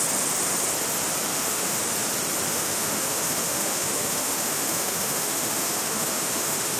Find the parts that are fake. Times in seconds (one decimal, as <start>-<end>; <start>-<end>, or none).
1.3-1.8; 2.5-6.8